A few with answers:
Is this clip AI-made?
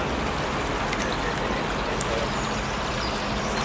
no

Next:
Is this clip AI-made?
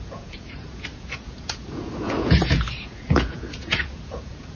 yes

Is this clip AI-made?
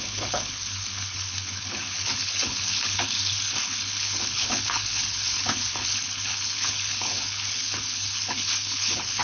yes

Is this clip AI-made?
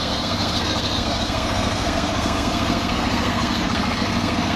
yes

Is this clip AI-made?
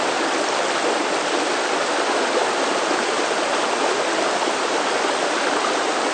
no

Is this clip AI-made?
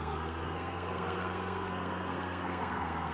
yes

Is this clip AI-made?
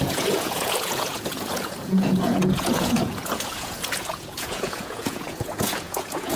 yes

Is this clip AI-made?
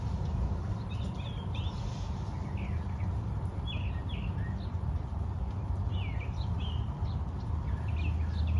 no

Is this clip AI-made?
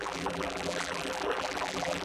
yes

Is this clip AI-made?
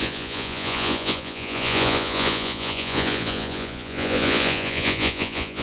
yes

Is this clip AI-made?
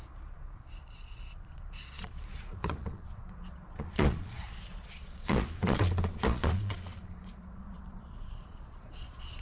yes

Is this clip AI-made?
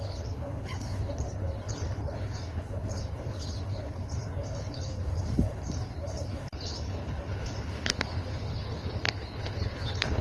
yes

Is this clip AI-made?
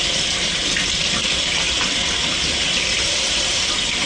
yes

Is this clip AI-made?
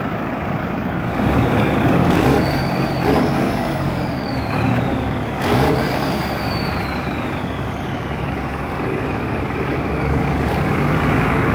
yes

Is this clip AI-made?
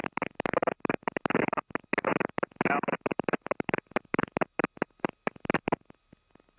no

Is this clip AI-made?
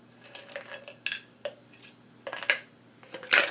no